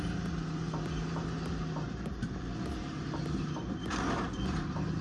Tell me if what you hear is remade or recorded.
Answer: recorded